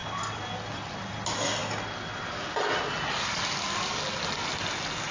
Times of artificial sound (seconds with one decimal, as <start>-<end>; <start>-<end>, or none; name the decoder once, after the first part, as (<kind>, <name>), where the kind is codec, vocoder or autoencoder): none